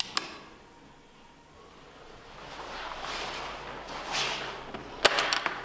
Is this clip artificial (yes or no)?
no